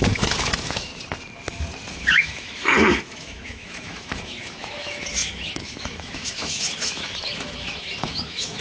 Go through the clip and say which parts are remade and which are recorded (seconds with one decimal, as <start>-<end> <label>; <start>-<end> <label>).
0.0-0.9 remade; 0.9-1.9 recorded; 1.9-8.6 remade